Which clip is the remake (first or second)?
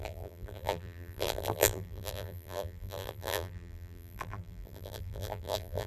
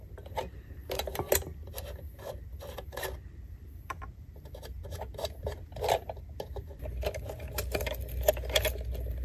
first